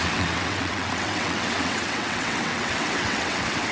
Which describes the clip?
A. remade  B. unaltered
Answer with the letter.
A